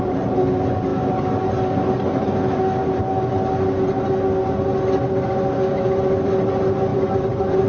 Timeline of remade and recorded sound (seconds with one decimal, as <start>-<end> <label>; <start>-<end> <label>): 0.0-7.7 recorded